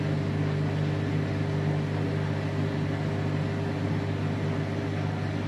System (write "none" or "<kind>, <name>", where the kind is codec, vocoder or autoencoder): none